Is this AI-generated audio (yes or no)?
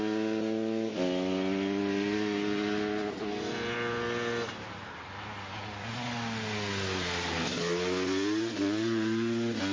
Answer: no